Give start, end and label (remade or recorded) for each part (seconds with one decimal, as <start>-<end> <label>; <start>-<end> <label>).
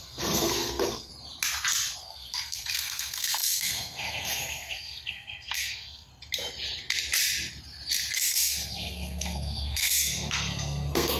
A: 0.0-1.1 remade; 1.1-2.0 recorded; 2.0-6.1 remade; 6.1-8.1 recorded; 8.1-11.2 remade